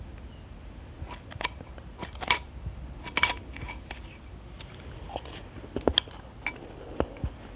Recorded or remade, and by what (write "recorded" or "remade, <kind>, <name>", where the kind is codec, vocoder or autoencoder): recorded